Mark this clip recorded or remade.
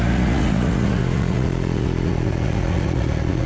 remade